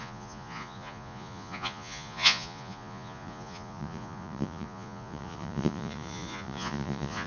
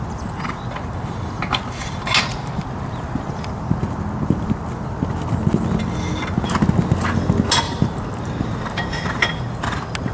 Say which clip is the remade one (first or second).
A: first